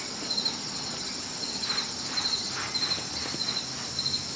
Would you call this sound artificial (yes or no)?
no